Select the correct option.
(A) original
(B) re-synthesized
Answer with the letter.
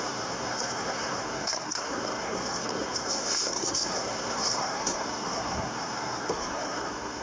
B